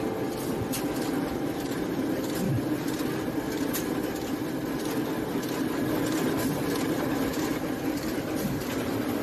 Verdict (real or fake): real